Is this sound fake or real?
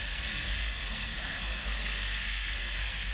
fake